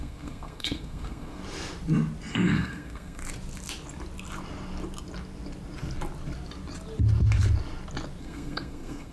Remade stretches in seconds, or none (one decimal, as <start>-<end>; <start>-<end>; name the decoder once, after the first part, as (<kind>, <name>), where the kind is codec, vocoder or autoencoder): 0.0-1.4 (codec, SNAC); 2.3-3.2; 8.2-9.1